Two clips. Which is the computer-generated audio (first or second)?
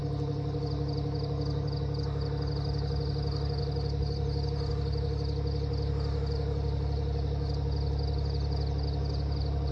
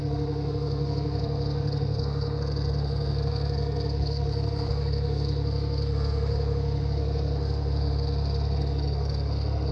second